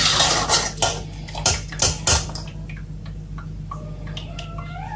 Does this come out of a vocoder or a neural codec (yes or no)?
no